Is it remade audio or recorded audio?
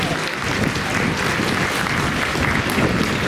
recorded